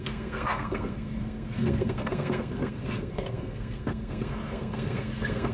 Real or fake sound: fake